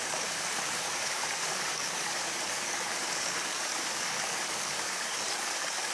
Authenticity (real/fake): fake